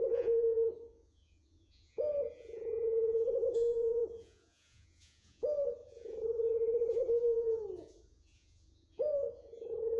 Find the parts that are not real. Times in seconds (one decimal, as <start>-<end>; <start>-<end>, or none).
0.0-10.0